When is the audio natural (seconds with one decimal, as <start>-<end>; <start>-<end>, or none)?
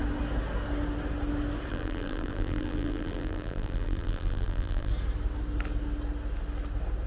0.0-1.7; 4.9-7.1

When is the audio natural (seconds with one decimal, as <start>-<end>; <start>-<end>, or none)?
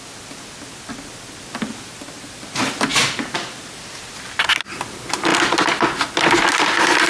0.0-7.1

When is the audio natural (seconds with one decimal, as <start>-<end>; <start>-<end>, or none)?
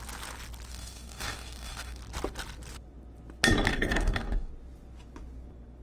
0.0-0.7; 2.0-3.7; 4.5-5.8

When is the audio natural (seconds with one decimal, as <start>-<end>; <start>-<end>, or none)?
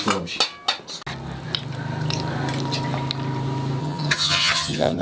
0.0-3.8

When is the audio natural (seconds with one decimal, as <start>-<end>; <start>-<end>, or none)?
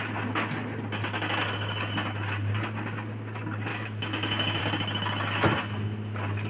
0.0-3.7; 4.6-6.5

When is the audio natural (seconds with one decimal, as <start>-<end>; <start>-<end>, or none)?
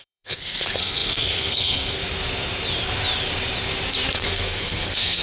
2.0-4.2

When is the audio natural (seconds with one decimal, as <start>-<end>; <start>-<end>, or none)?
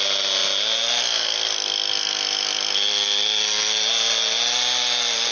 0.0-5.3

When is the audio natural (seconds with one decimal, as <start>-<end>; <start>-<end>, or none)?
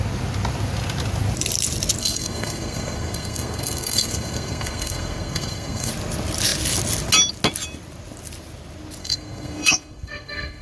0.0-2.0; 5.9-9.0